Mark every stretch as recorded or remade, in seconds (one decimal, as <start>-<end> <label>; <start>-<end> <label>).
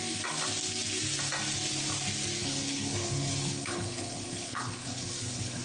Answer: 0.0-2.4 recorded; 2.4-5.6 remade